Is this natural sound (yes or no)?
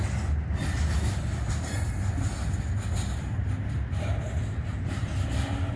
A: yes